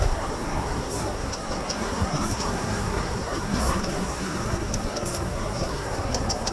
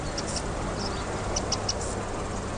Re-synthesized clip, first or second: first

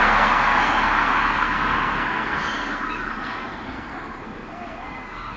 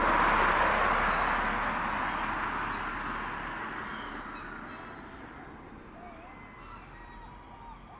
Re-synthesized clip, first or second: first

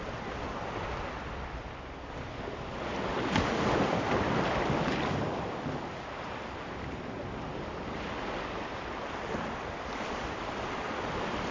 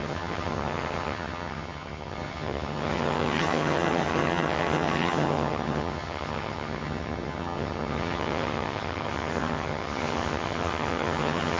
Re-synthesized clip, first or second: second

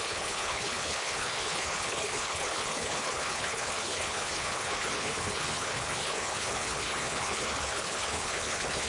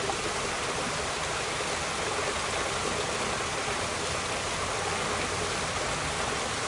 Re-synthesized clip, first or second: first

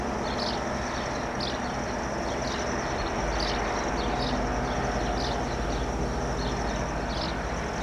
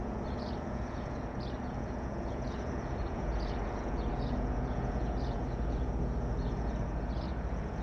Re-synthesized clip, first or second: second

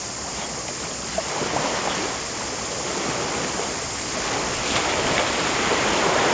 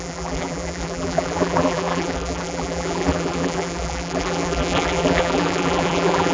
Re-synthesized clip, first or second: second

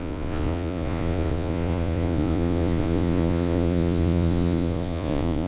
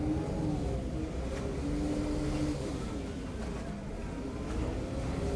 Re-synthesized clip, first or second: first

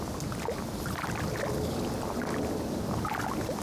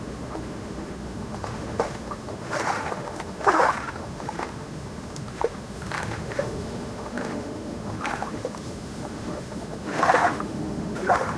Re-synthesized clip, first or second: second